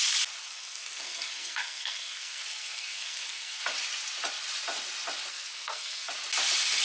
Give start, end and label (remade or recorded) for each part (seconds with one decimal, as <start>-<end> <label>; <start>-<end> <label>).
0.0-0.4 recorded; 0.4-3.6 remade; 3.6-5.3 recorded; 5.3-6.1 remade; 6.1-6.8 recorded

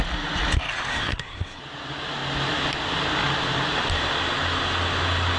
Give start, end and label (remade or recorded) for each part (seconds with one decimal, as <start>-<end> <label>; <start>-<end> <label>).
0.0-0.9 recorded; 0.9-1.6 remade; 1.6-5.4 recorded

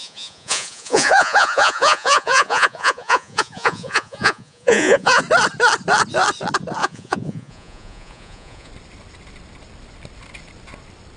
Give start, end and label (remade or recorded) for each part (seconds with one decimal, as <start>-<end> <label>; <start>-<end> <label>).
0.0-5.2 remade; 5.2-6.8 recorded; 6.8-8.7 remade; 8.7-11.2 recorded

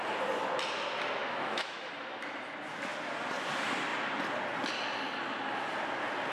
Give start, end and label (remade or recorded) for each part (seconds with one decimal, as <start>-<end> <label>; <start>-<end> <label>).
0.0-1.2 recorded; 1.2-1.9 remade; 1.9-6.3 recorded

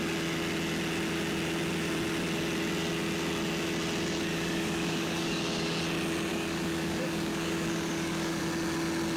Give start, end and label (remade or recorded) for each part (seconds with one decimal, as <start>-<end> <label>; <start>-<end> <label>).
0.0-4.3 recorded; 4.3-5.8 remade; 5.8-6.3 recorded; 6.3-8.4 remade; 8.4-9.2 recorded

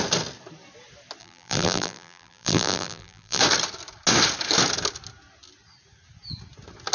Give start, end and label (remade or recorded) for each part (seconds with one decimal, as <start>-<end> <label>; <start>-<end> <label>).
0.0-1.2 recorded; 1.2-3.4 remade; 3.4-6.9 recorded

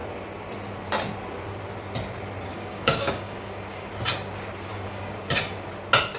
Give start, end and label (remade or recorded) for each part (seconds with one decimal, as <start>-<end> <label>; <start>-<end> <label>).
0.0-2.5 recorded; 2.5-3.9 remade; 3.9-4.7 recorded; 4.7-5.3 remade; 5.3-6.2 recorded

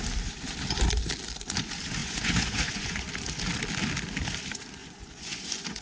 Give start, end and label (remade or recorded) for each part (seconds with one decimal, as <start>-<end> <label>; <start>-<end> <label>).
0.0-2.0 recorded; 2.0-3.1 remade; 3.1-4.8 recorded; 4.8-5.8 remade